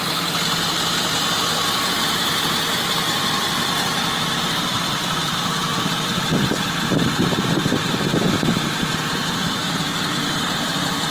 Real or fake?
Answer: fake